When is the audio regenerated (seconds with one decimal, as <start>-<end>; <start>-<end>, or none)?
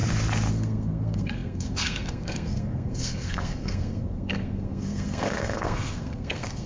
0.5-6.7